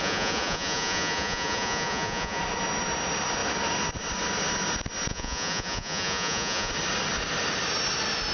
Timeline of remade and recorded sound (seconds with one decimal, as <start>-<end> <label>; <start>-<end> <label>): 0.0-2.4 remade; 2.4-5.1 recorded; 5.1-6.7 remade; 6.7-8.3 recorded